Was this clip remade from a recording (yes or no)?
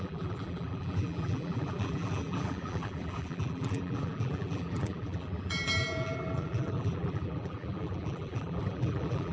yes